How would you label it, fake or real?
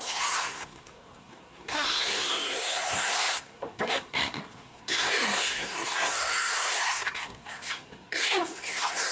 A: fake